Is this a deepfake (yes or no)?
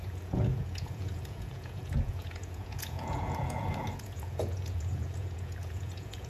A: yes